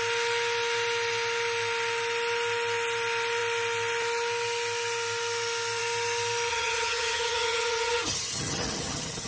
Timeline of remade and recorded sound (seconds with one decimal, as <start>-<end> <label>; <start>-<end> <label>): 0.0-6.5 recorded; 6.5-9.3 remade